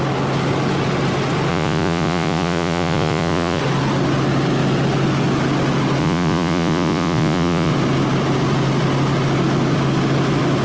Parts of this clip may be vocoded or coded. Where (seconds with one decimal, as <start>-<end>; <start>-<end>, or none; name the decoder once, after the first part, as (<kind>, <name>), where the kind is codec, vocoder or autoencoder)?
1.5-3.6 (vocoder, Vocos); 6.0-7.7